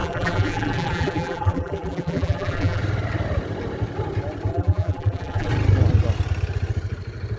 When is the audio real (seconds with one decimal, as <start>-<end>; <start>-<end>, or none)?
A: 2.8-4.5; 5.5-7.4